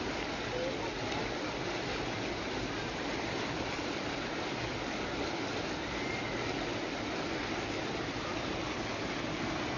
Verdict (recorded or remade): recorded